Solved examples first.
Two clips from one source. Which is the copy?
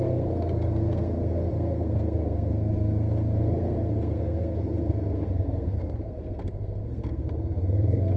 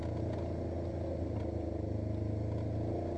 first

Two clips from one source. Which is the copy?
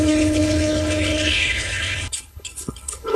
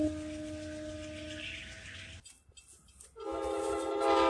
first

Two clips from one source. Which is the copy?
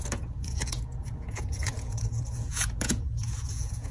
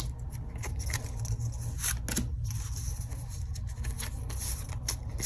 first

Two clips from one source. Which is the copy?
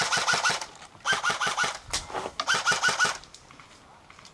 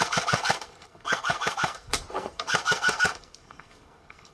second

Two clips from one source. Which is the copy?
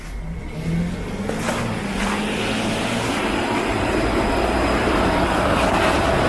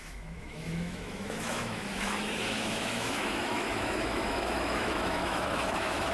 second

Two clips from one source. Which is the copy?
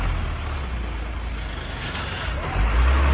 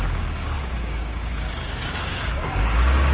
second